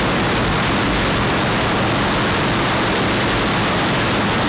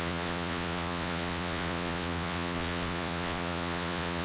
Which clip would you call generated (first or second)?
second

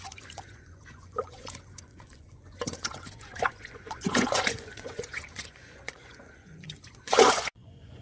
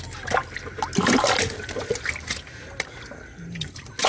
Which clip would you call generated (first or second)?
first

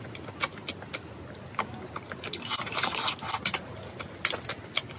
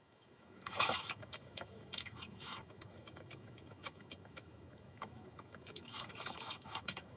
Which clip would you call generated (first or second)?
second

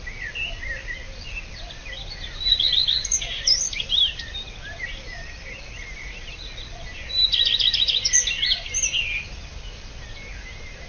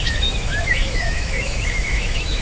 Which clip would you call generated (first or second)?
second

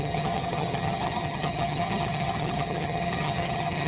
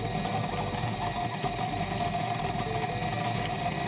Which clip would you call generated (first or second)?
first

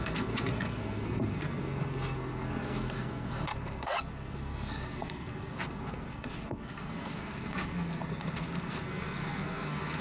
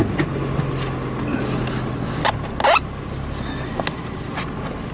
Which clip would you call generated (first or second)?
first